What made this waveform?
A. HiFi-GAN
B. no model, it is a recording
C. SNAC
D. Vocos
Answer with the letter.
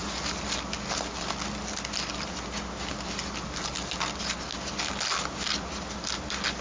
B